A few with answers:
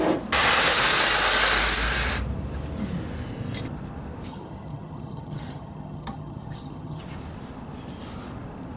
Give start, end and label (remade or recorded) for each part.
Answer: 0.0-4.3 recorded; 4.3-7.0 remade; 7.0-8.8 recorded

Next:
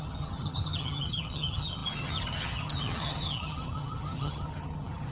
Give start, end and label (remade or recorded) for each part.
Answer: 0.0-5.1 remade

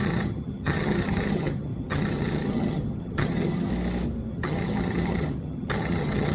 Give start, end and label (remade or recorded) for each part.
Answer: 0.0-3.7 remade; 3.7-4.3 recorded; 4.3-6.3 remade

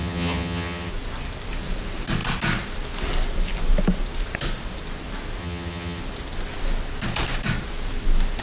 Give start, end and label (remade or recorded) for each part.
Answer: 0.0-0.9 remade; 0.9-5.4 recorded; 5.4-6.0 remade; 6.0-8.4 recorded

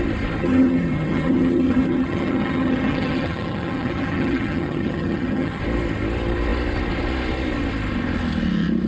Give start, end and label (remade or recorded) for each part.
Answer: 0.0-0.4 recorded; 0.4-5.6 remade; 5.6-8.9 recorded